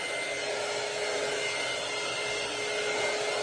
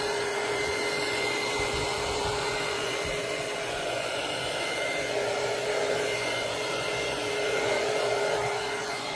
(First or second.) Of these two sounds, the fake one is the second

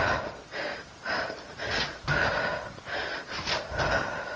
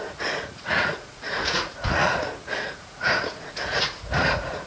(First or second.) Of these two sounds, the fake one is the second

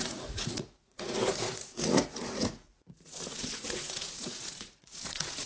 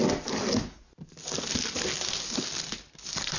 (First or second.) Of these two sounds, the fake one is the first